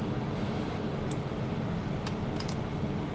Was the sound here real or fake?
real